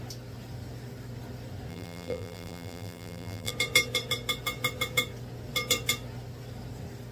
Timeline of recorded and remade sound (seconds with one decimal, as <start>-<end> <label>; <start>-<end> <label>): 0.0-1.7 recorded; 1.7-3.5 remade; 3.5-7.1 recorded